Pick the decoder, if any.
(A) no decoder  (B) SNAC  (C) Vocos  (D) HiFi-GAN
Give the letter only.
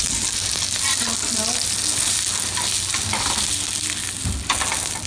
A